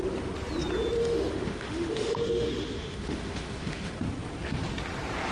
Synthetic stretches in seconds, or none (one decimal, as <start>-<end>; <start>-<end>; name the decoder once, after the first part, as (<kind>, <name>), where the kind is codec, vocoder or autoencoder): 1.0-3.9 (autoencoder, DAC-VAE)